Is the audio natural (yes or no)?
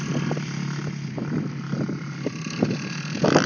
yes